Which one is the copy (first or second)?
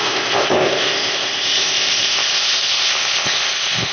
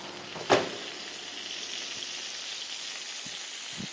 first